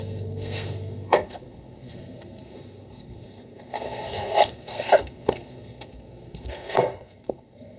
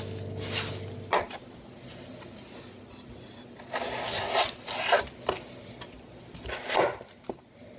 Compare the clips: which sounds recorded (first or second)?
second